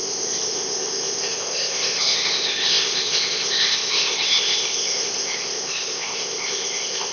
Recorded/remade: remade